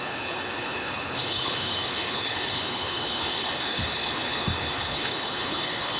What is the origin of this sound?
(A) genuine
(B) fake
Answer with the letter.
B